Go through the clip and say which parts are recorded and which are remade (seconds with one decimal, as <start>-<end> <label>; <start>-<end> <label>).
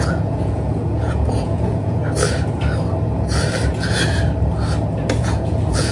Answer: 0.0-2.0 remade; 2.0-5.2 recorded; 5.2-5.9 remade